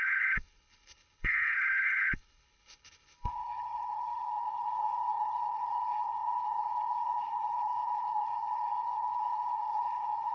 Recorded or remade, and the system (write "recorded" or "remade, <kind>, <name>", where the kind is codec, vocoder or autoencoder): remade, codec, HILCodec